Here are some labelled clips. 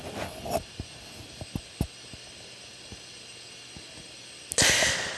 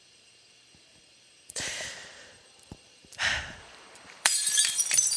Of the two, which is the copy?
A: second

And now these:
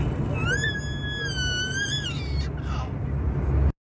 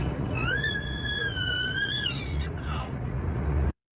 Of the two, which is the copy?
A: second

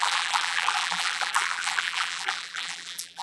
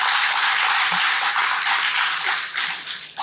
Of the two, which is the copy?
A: first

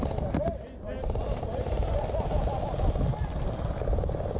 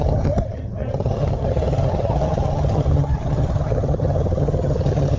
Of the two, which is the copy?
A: second